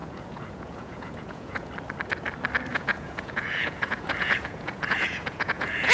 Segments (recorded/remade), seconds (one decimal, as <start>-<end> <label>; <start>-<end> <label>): 0.0-1.7 remade; 1.7-2.7 recorded; 2.7-5.9 remade